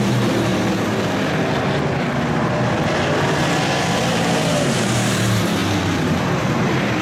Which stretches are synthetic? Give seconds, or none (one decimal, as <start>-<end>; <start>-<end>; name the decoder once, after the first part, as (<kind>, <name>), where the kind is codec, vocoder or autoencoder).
0.0-0.5 (vocoder, BigVGAN v2); 4.1-7.0